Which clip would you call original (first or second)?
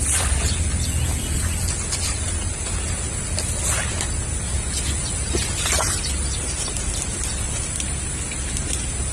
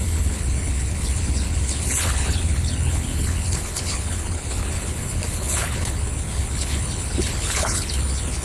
first